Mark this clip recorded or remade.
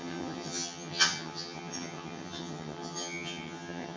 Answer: remade